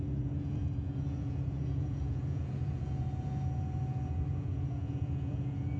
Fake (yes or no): yes